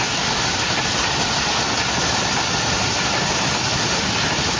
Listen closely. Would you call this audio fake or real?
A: real